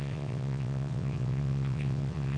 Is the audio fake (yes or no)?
yes